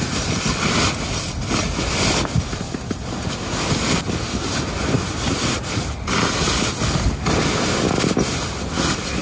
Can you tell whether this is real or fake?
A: real